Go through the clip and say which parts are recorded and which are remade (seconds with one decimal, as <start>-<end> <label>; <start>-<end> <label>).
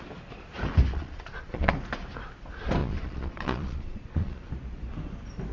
0.0-0.9 recorded; 0.9-1.7 remade; 1.7-2.8 recorded; 2.8-4.5 remade; 4.5-5.5 recorded